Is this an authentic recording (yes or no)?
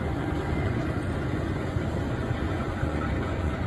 no